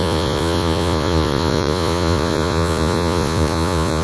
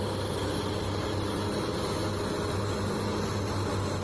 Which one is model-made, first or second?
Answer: first